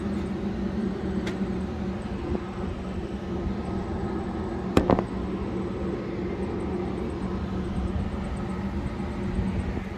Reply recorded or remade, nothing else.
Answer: recorded